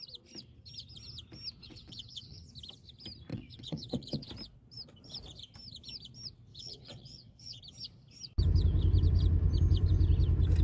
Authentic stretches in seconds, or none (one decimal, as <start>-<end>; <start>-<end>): 0.0-1.6; 2.5-3.3; 4.3-6.5; 7.6-10.6